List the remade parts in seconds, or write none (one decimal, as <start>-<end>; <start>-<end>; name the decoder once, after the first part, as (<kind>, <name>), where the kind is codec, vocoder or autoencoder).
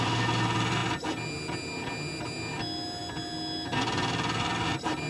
none